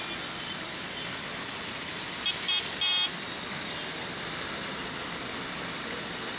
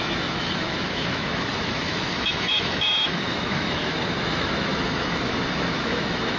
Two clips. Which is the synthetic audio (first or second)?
second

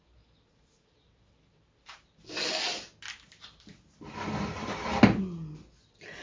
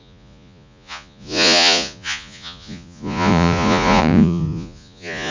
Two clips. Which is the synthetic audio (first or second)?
second